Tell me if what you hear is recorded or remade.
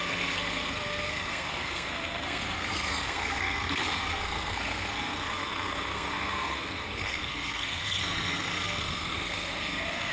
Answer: remade